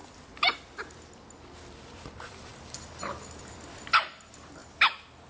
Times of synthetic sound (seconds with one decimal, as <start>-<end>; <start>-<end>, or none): 1.5-5.3